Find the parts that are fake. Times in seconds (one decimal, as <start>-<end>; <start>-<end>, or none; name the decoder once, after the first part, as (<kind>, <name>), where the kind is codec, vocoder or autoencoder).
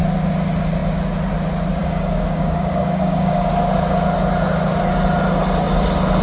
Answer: 1.8-3.5 (codec, DAC)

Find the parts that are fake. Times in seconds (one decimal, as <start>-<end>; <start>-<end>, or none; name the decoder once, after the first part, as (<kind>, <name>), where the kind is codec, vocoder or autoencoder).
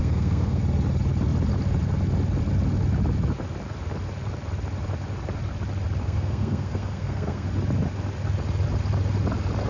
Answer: 0.0-0.6 (codec, SNAC); 6.0-7.5